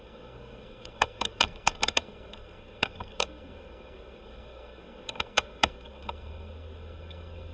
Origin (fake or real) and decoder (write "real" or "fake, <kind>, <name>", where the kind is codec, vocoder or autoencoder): fake, codec, SNAC